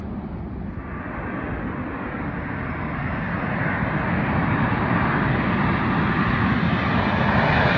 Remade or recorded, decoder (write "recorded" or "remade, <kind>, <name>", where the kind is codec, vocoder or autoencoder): recorded